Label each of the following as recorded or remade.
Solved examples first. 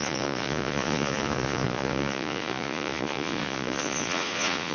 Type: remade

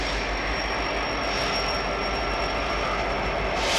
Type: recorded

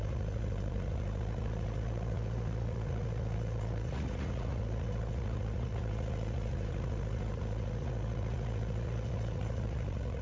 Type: remade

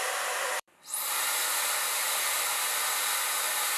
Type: remade